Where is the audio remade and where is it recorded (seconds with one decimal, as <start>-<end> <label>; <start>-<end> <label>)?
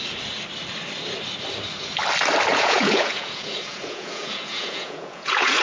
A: 0.0-2.5 recorded; 2.5-5.6 remade